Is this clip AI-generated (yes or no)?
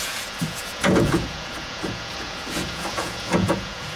yes